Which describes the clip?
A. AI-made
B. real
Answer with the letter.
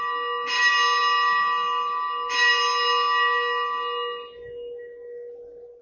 B